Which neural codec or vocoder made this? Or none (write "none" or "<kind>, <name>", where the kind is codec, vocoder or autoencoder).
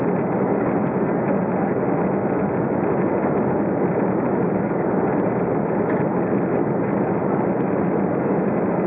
none